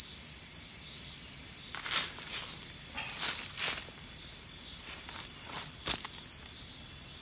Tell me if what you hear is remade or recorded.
recorded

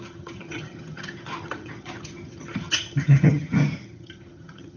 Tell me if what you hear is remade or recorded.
remade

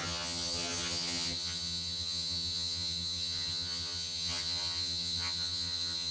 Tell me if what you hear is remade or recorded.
remade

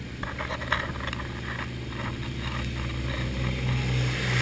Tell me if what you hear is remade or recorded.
recorded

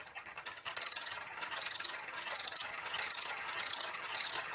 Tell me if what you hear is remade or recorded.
remade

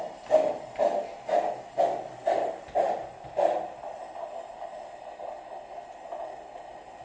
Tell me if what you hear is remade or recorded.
recorded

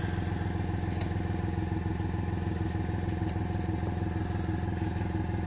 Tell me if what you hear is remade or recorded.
recorded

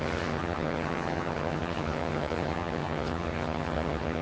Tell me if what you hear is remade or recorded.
remade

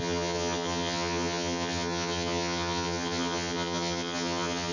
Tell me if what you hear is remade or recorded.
remade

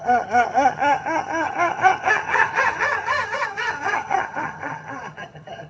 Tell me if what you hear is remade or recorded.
remade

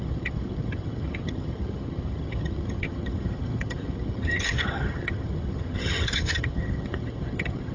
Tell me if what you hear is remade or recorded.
remade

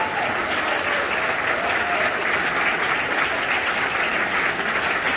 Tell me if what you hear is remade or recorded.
recorded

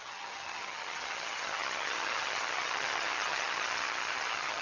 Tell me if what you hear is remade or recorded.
remade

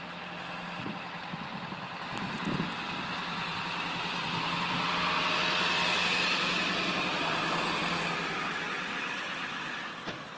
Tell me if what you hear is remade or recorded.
recorded